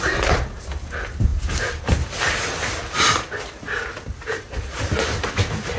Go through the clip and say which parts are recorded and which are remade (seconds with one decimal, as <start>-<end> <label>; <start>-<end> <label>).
0.0-5.8 recorded